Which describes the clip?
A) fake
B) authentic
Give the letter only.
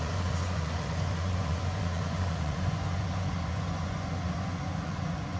A